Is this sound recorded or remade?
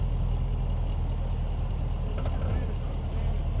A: recorded